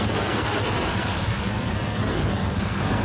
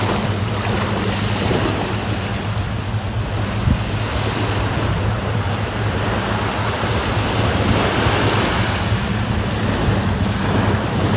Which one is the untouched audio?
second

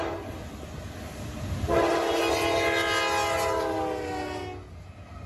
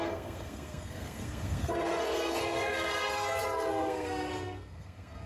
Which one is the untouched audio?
first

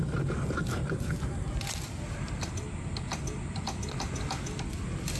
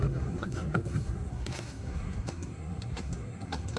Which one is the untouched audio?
first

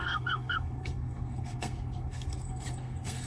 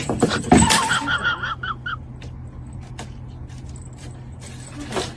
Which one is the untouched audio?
second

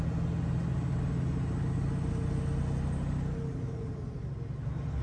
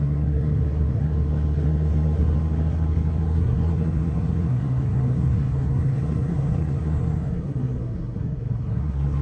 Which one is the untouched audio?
first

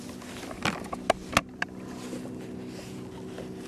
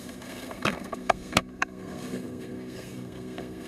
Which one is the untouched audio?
first